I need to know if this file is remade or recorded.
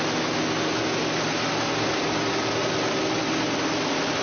recorded